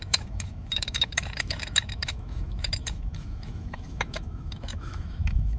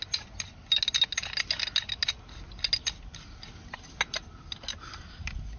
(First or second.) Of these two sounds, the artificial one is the first